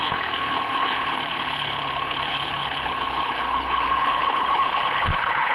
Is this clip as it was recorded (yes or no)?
no